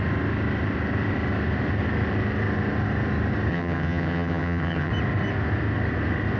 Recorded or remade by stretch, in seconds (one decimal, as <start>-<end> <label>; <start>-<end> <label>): 0.0-3.5 recorded; 3.5-4.9 remade; 4.9-6.4 recorded